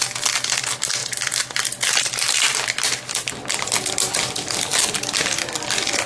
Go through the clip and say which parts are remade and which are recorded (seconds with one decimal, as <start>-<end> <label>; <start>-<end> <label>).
0.0-6.1 recorded